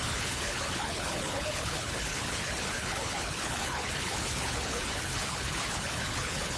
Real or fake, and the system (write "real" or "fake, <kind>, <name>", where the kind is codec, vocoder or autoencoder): fake, codec, HILCodec